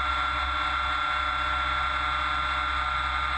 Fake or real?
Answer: real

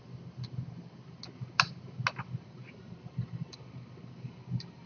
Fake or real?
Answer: real